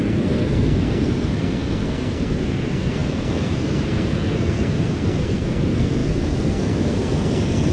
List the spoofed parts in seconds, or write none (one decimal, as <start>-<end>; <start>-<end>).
0.0-7.7